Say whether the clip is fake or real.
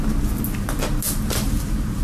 real